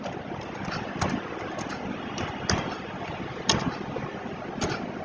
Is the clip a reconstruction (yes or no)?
no